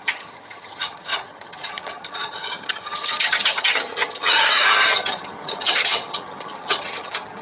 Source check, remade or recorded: remade